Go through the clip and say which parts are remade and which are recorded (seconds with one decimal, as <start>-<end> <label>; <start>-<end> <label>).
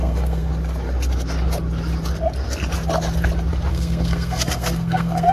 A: 0.0-0.5 remade; 0.5-3.7 recorded; 3.7-5.3 remade